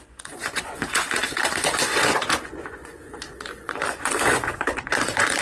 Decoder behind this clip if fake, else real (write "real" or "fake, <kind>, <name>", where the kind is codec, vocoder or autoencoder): fake, vocoder, Vocos